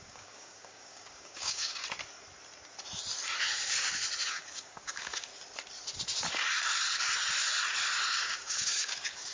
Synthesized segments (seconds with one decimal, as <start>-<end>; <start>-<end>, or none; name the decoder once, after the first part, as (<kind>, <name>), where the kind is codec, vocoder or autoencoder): 0.0-1.8 (codec, DAC); 4.3-5.3; 8.1-9.3